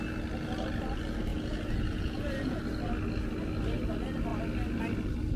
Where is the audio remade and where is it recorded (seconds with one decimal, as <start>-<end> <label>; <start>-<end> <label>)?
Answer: 0.0-1.3 recorded; 1.3-2.6 remade; 2.6-5.4 recorded